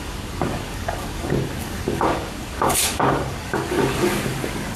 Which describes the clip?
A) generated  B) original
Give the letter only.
A